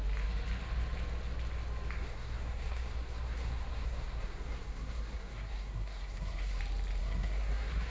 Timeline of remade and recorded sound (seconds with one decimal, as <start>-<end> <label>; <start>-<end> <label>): 0.0-2.0 recorded; 2.0-6.6 remade; 6.6-7.0 recorded; 7.0-7.9 remade